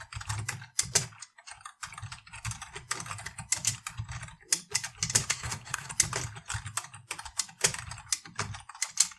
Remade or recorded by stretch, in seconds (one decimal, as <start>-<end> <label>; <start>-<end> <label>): 0.0-5.3 recorded; 5.3-5.9 remade; 5.9-9.2 recorded